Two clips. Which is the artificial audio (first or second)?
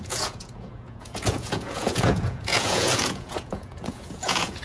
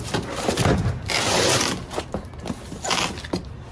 first